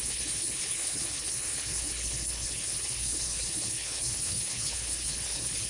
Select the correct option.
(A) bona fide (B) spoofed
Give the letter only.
B